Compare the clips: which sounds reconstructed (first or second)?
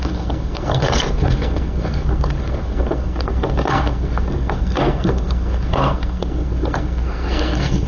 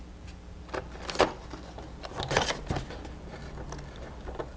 first